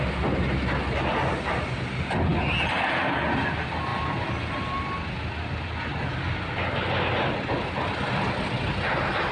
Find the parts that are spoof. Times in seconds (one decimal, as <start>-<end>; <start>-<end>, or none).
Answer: none